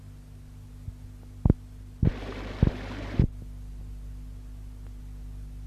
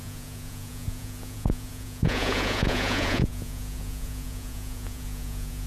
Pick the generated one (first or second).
second